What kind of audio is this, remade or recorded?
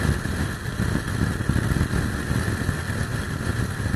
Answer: recorded